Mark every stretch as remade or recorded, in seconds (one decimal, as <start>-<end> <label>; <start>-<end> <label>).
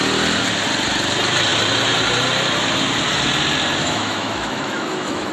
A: 0.0-3.8 recorded; 3.8-5.3 remade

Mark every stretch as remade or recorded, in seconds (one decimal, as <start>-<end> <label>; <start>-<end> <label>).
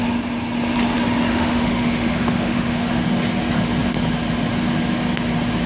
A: 0.0-1.3 recorded; 1.3-3.0 remade; 3.0-5.7 recorded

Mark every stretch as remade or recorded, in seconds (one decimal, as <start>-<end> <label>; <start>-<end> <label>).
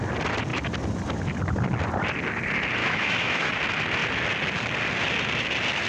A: 0.0-2.8 recorded; 2.8-3.6 remade; 3.6-5.9 recorded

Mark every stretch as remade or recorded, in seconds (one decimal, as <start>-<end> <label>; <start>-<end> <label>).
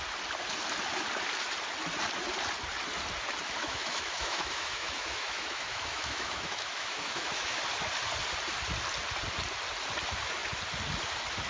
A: 0.0-3.6 recorded; 3.6-7.6 remade; 7.6-11.5 recorded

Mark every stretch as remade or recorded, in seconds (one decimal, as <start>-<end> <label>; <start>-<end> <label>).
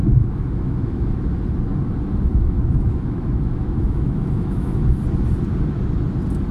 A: 0.0-1.3 remade; 1.3-2.3 recorded; 2.3-5.0 remade; 5.0-6.5 recorded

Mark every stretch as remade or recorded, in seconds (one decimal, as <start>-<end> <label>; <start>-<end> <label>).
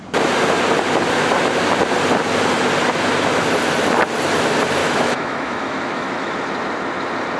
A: 0.0-4.8 recorded; 4.8-6.3 remade; 6.3-7.4 recorded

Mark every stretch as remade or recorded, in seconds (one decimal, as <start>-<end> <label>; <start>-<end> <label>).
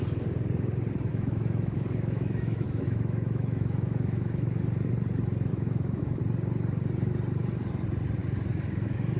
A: 0.0-1.1 recorded; 1.1-4.6 remade; 4.6-5.5 recorded; 5.5-6.2 remade; 6.2-9.2 recorded